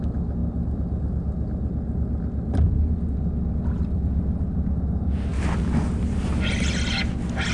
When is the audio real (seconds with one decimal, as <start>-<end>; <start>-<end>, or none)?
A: 0.0-7.5